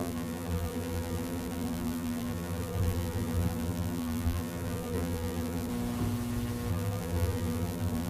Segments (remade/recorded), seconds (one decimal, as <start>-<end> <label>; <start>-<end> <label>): 0.0-5.7 remade; 5.7-6.7 recorded; 6.7-8.1 remade